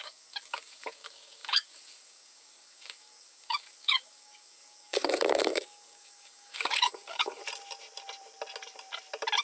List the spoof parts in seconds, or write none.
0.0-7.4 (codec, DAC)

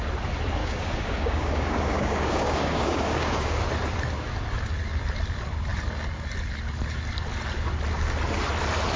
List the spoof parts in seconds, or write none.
0.6-3.6 (codec, DAC)

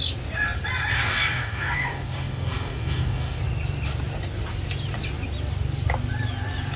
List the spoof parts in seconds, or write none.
0.9-3.4 (codec, DAC)

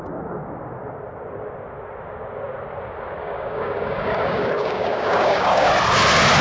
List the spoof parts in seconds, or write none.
3.2-5.7 (codec, DAC)

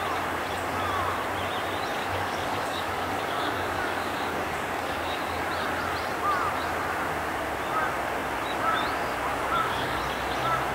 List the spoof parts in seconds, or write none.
2.0-5.2 (codec, DAC); 9.3-10.0